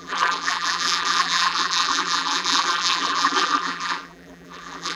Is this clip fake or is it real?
fake